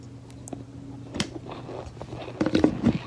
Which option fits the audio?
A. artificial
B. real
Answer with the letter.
B